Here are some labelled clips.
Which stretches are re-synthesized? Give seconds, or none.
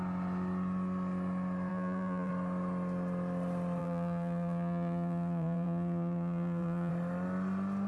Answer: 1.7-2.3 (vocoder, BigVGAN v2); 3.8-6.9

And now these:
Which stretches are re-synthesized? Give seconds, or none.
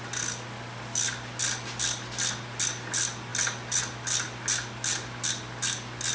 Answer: none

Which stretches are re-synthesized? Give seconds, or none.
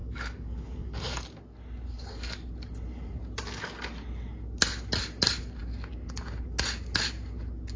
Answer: 0.0-1.2 (codec, DAC)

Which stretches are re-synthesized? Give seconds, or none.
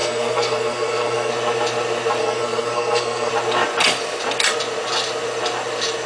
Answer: 0.0-1.3 (codec, SNAC); 2.2-3.3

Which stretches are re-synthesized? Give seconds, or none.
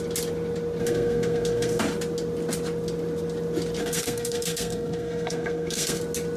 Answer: 0.8-1.8 (codec, SNAC); 3.8-6.0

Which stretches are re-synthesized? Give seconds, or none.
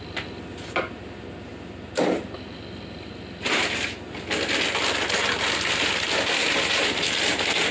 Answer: none